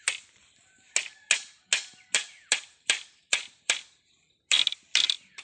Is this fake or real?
real